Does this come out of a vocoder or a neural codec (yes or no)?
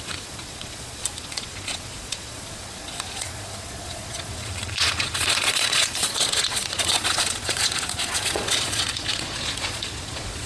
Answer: yes